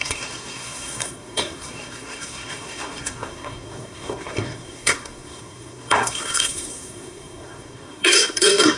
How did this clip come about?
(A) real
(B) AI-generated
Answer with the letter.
B